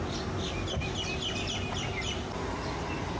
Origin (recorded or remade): recorded